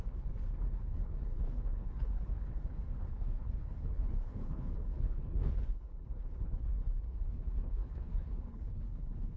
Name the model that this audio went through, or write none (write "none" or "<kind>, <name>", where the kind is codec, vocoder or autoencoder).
codec, HILCodec